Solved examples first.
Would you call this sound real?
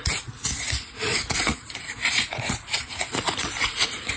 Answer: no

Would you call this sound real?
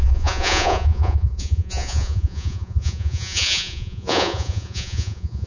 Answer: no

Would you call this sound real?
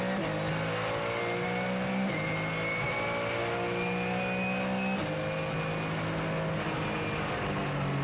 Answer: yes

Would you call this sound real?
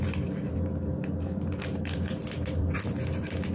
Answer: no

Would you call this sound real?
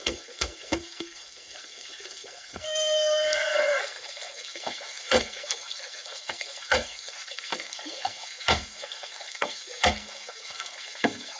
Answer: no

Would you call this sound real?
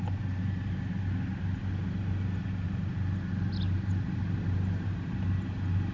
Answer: yes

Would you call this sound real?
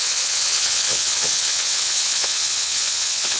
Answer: no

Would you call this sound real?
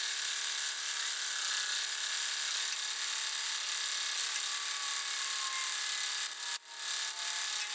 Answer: yes